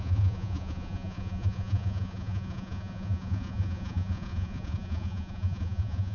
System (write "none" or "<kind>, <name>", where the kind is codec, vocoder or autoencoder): vocoder, Vocos